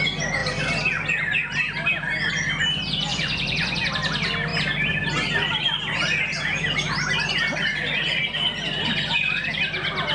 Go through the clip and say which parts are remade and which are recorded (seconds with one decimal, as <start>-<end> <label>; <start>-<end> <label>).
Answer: 0.0-3.1 recorded; 3.1-3.9 remade; 3.9-10.1 recorded

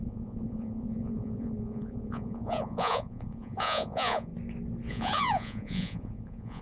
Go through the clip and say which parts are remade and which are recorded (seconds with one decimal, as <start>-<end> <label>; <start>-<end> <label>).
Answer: 0.0-4.3 remade; 4.3-4.9 recorded; 4.9-6.6 remade

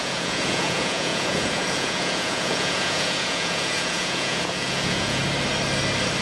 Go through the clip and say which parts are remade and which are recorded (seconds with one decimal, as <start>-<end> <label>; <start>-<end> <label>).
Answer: 0.0-5.2 remade; 5.2-6.2 recorded

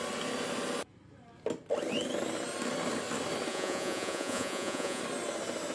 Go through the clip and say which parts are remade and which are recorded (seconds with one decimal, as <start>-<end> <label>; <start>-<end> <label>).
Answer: 0.0-3.5 recorded; 3.5-5.0 remade; 5.0-5.7 recorded

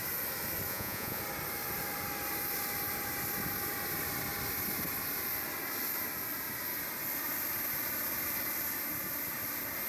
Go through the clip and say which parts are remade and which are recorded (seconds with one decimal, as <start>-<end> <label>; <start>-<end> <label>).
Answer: 0.0-0.7 recorded; 0.7-1.2 remade; 1.2-9.9 recorded

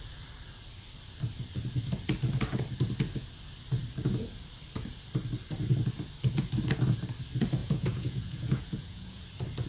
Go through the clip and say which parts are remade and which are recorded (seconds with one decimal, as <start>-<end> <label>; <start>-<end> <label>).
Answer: 0.0-7.6 recorded; 7.6-9.2 remade; 9.2-9.7 recorded

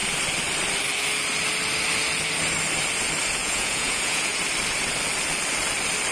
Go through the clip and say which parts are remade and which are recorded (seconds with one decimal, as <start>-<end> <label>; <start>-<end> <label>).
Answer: 0.0-3.4 recorded; 3.4-4.4 remade; 4.4-6.1 recorded